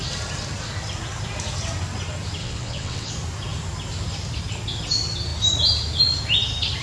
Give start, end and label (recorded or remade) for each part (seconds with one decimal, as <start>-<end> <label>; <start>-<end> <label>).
0.0-2.4 recorded; 2.4-3.1 remade; 3.1-6.8 recorded